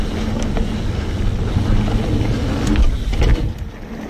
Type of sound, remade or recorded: recorded